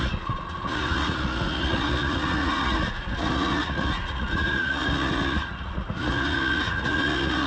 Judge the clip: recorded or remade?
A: remade